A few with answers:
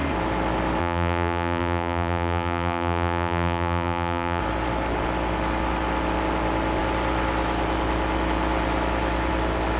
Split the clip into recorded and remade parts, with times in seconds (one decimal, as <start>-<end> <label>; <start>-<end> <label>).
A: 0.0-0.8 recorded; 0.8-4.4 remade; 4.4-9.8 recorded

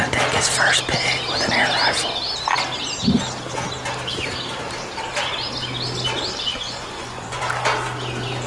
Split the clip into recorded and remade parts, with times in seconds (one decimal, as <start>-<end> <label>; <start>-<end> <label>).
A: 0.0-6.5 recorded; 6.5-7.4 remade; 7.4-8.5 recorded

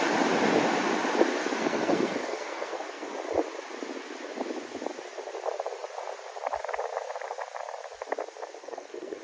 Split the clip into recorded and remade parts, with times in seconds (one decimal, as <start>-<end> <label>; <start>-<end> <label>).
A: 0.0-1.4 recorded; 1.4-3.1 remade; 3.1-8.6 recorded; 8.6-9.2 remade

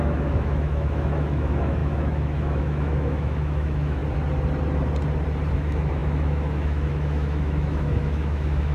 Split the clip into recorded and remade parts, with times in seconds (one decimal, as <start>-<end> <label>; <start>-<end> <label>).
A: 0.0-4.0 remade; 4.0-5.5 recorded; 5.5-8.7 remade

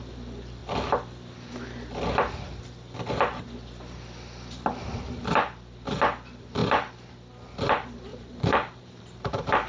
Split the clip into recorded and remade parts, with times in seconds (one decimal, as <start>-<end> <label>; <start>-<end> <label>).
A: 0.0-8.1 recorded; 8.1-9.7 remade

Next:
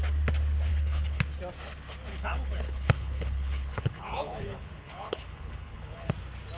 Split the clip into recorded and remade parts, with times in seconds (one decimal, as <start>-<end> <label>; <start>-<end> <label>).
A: 0.0-0.7 recorded; 0.7-1.2 remade; 1.2-2.1 recorded; 2.1-6.1 remade; 6.1-6.6 recorded